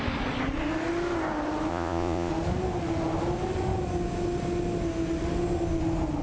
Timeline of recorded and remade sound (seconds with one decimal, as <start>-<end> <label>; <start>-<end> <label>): 0.0-1.7 recorded; 1.7-2.3 remade; 2.3-6.2 recorded